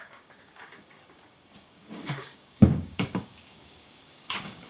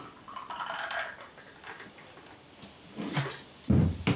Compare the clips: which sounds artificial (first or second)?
first